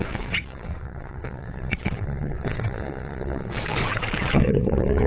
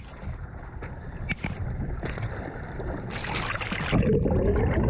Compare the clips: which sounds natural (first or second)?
second